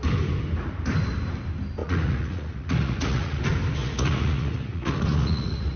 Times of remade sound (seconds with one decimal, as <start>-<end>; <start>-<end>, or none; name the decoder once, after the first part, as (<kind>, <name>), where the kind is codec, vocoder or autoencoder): 1.8-3.4 (vocoder, Vocos); 3.8-5.8